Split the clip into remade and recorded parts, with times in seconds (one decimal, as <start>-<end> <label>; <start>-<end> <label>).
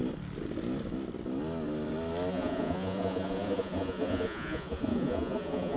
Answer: 0.0-2.3 recorded; 2.3-5.8 remade